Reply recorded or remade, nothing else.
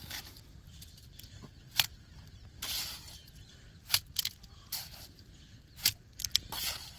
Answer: recorded